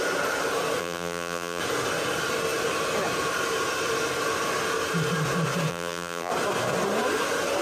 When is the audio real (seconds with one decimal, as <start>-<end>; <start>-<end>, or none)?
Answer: 0.0-0.8; 1.6-5.7; 6.3-7.6